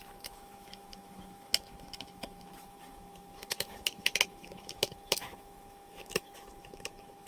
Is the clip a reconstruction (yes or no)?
yes